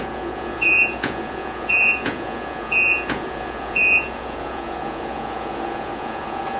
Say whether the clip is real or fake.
fake